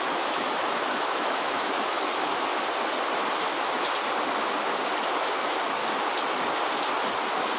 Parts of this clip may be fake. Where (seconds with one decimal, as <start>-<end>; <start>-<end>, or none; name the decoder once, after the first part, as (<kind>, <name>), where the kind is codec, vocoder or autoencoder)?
0.0-2.5 (autoencoder, DAC-VAE); 5.0-5.8